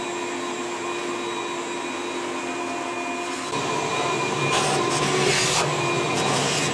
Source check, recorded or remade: recorded